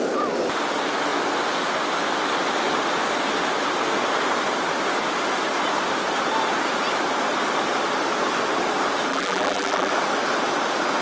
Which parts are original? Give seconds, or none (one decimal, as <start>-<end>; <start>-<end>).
0.0-9.1; 9.9-11.0